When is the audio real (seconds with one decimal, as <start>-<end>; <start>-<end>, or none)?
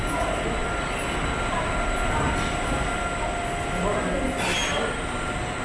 0.0-4.6; 5.1-5.6